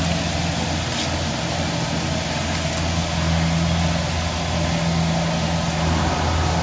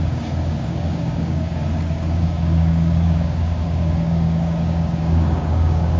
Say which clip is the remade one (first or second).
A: second